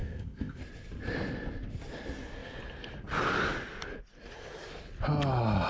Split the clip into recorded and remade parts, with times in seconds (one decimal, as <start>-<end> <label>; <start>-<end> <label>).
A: 0.0-0.6 remade; 0.6-5.7 recorded